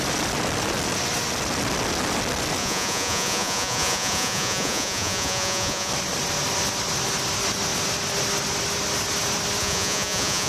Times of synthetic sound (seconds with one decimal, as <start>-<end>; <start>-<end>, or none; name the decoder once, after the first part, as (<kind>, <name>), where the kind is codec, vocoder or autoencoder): 2.6-5.9 (vocoder, Vocos); 9.6-10.5